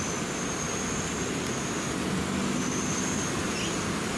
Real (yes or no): yes